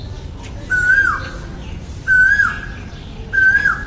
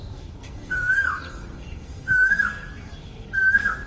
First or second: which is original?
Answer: first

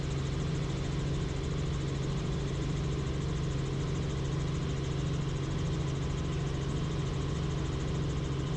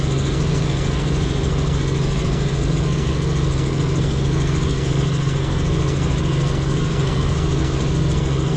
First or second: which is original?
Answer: first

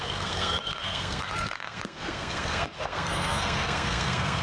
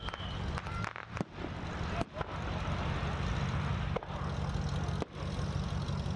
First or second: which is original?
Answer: second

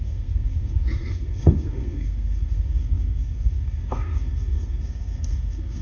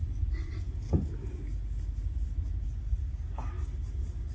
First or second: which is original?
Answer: second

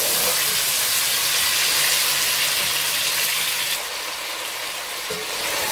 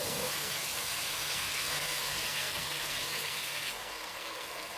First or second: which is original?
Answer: first